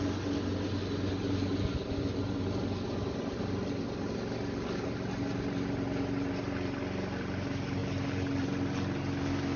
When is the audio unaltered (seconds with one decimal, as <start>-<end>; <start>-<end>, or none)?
0.0-9.6